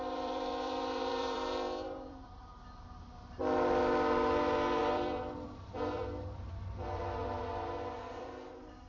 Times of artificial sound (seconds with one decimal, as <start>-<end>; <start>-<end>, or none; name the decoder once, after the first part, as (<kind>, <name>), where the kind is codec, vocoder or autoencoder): 0.0-2.5 (vocoder, BigVGAN v2); 4.8-7.0; 8.1-8.9